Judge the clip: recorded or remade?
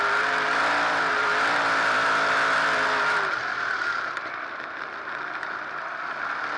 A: remade